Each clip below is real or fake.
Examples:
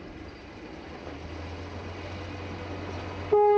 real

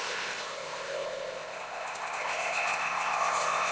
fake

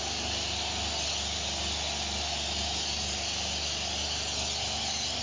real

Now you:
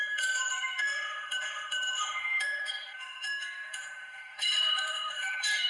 fake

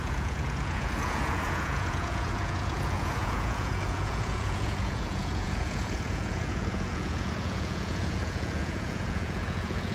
fake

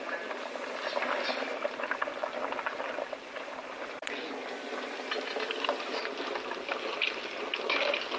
real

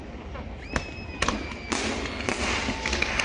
real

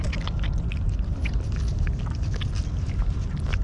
real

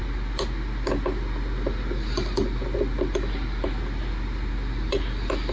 real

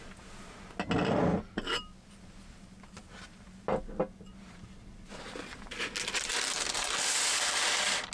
real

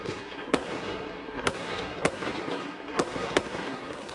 fake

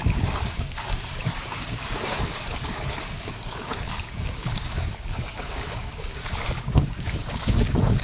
fake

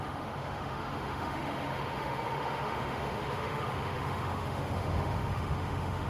fake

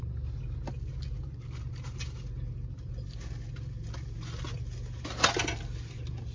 real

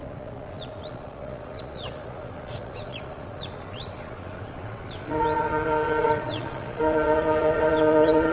fake